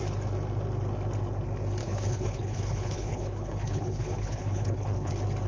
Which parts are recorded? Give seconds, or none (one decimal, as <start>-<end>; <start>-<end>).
0.0-1.8; 5.1-5.5